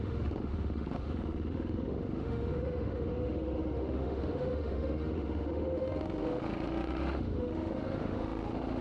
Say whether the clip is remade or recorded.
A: remade